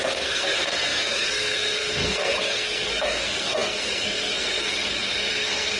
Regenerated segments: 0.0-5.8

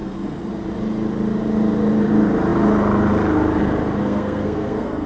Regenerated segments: 0.0-0.5; 4.0-5.1

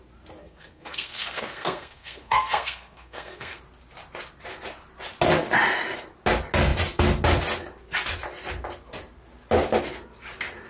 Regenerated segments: 0.4-3.6

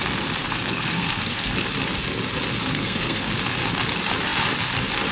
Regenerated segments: 0.4-1.5; 2.7-3.3